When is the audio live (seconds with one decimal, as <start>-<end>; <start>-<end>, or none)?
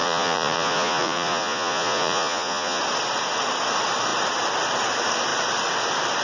2.8-6.2